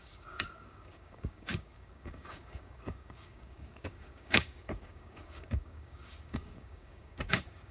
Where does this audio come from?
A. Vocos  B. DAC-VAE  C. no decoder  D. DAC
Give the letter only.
D